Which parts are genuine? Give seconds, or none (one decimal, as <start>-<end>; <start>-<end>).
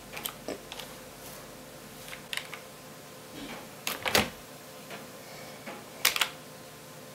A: 0.0-3.5; 5.5-7.1